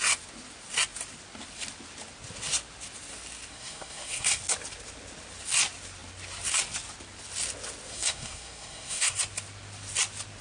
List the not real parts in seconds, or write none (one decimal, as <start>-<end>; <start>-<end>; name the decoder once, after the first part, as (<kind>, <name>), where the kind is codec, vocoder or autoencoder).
3.5-4.4 (codec, SNAC); 7.9-9.2